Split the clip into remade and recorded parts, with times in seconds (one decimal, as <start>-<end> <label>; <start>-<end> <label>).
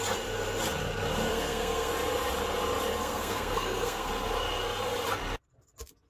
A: 0.0-1.3 recorded; 1.3-1.9 remade; 1.9-3.0 recorded; 3.0-4.1 remade; 4.1-6.1 recorded